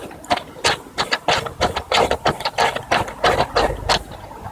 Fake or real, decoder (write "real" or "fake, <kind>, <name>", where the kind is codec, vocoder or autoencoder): real